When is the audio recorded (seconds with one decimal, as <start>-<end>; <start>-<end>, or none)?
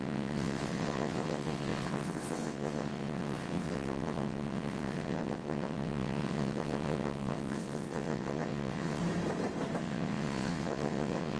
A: 9.0-9.8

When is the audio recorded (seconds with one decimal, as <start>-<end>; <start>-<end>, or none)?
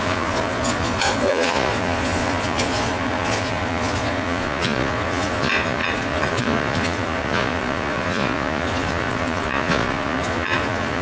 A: none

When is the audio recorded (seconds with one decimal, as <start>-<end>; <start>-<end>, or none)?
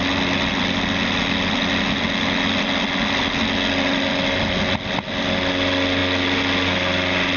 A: 0.0-7.4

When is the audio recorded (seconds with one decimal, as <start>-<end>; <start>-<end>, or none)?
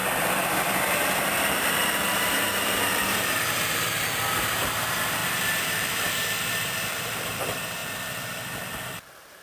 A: none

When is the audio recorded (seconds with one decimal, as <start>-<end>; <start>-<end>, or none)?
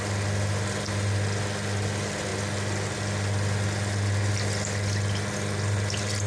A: 0.0-6.3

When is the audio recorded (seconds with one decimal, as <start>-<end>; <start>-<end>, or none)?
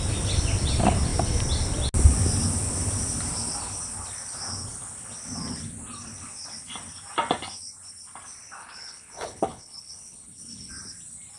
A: 0.0-8.6; 10.7-11.4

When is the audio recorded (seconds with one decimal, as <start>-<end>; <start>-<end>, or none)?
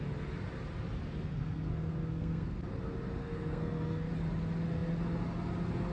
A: 0.0-1.3; 2.6-3.2; 4.1-5.9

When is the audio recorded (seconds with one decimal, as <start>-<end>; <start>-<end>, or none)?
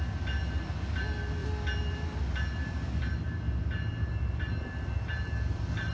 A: 0.0-5.9